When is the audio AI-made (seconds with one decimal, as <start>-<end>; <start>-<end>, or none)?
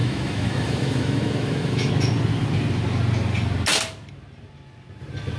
0.0-1.9